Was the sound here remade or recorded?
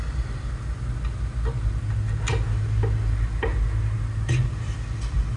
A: recorded